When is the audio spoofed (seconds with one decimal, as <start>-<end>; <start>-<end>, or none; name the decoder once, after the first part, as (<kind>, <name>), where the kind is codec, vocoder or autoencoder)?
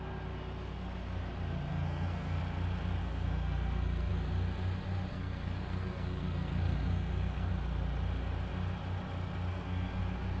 1.7-2.4 (codec, SNAC); 3.0-4.1; 5.1-7.5; 9.5-10.0